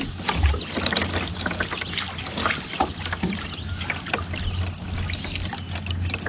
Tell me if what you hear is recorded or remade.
recorded